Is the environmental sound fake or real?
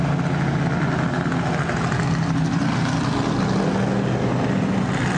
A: real